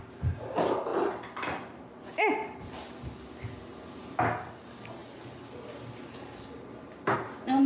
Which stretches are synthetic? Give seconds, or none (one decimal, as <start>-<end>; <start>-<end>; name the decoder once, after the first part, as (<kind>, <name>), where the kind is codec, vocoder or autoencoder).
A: none